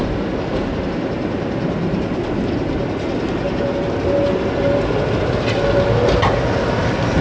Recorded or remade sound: recorded